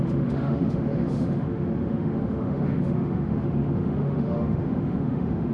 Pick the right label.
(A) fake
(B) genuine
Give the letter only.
A